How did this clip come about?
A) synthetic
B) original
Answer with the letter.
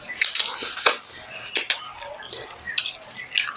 B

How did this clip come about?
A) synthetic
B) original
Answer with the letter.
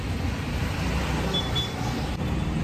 B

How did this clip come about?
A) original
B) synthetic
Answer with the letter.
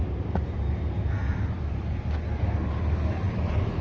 A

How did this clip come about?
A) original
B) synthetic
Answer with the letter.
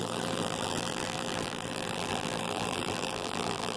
B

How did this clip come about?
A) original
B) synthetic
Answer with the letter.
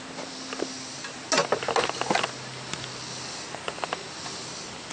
A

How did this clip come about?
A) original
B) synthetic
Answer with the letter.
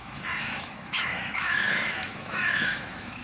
B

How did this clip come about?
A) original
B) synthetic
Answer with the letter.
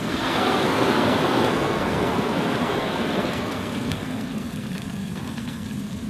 B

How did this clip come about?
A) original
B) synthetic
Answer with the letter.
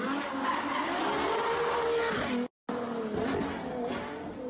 A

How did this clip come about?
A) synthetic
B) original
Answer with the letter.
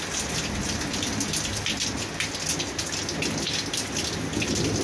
B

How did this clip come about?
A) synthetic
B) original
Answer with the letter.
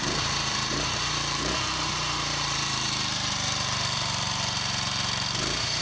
A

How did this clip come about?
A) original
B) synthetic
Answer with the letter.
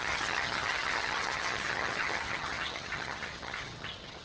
B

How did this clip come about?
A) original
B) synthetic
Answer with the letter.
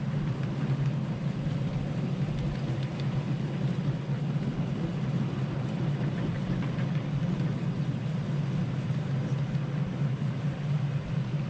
A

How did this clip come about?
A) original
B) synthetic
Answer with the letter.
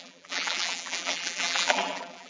B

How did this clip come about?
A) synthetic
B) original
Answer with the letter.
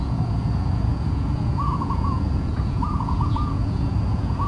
A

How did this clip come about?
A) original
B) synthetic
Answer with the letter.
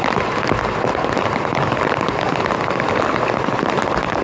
A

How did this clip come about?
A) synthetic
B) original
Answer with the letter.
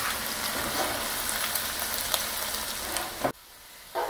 B